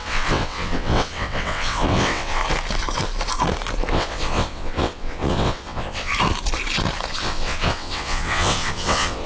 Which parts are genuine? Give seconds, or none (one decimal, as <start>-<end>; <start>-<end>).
2.4-3.9; 6.1-7.2